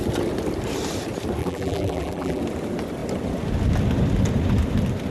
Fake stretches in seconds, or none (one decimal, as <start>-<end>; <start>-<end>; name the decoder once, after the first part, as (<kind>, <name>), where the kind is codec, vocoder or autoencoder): 1.4-2.4 (vocoder, BigVGAN v2)